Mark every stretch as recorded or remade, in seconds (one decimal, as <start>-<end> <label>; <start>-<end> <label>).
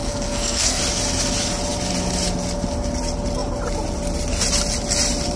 0.0-0.8 remade; 0.8-5.4 recorded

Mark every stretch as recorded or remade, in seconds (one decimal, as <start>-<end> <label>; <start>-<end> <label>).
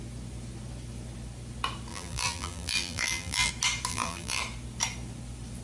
0.0-1.9 recorded; 1.9-3.5 remade; 3.5-3.9 recorded; 3.9-4.4 remade; 4.4-5.6 recorded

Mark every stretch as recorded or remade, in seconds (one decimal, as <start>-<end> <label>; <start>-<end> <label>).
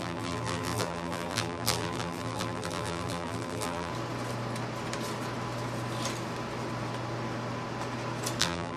0.0-3.9 remade; 3.9-8.4 recorded; 8.4-8.8 remade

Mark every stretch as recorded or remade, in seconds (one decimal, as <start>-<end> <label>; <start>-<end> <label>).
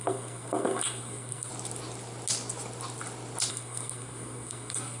0.0-1.5 remade; 1.5-3.5 recorded; 3.5-5.0 remade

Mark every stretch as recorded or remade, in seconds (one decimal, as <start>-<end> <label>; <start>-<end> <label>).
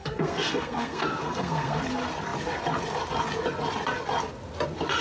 0.0-1.8 remade; 1.8-5.0 recorded